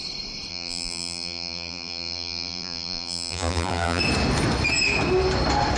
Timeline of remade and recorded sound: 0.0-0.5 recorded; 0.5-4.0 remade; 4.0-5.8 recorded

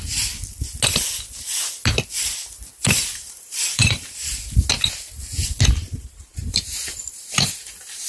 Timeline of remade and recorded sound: 0.0-3.1 recorded; 3.1-4.4 remade; 4.4-5.8 recorded; 5.8-8.1 remade

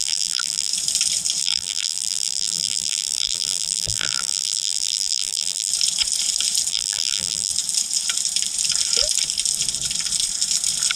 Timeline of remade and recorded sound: 0.0-0.7 remade; 0.7-1.4 recorded; 1.4-5.7 remade; 5.7-6.7 recorded; 6.7-7.5 remade; 7.5-11.0 recorded

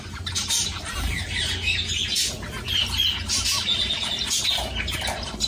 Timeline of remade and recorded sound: 0.0-2.0 remade; 2.0-4.5 recorded; 4.5-5.5 remade

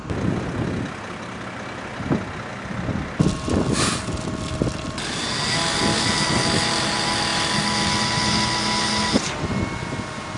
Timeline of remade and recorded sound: 0.0-2.5 recorded; 2.5-3.6 remade; 3.6-10.4 recorded

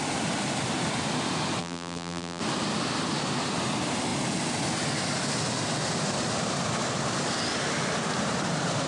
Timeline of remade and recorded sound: 0.0-1.6 recorded; 1.6-2.4 remade; 2.4-8.9 recorded